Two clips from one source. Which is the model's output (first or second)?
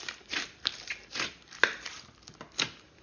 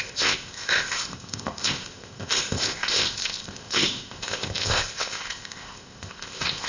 second